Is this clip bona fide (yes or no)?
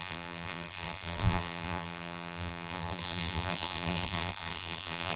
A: no